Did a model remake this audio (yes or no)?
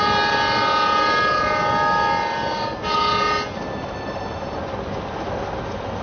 no